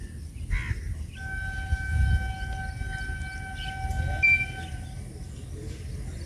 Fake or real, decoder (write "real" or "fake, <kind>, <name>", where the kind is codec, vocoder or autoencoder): real